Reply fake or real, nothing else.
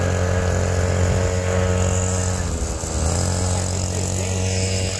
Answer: real